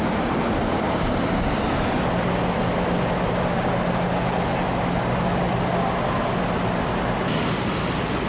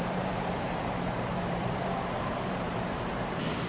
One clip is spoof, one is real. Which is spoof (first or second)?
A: second